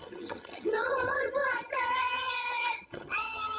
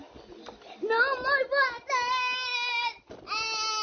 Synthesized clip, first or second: first